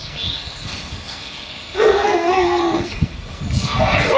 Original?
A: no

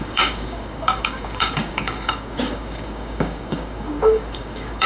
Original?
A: no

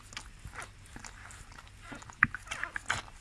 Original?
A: yes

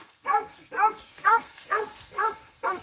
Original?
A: no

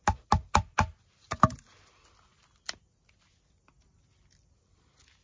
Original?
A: yes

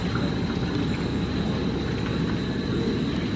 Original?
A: yes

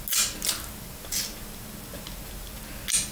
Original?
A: yes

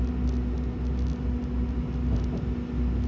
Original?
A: yes